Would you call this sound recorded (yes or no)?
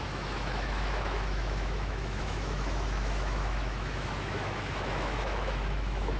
no